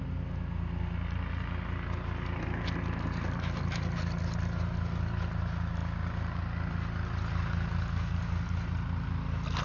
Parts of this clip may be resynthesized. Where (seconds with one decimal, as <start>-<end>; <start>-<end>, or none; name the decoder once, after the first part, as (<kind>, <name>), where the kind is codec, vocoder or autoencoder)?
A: none